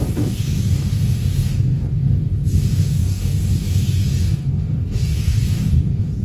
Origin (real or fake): fake